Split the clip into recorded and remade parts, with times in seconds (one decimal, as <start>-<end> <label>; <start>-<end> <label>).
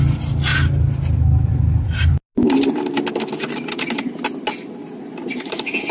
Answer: 0.0-5.9 recorded